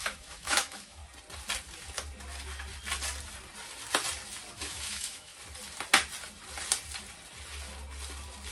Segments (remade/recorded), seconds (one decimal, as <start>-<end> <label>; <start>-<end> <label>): 0.0-1.0 remade; 1.0-4.5 recorded; 4.5-5.3 remade; 5.3-8.5 recorded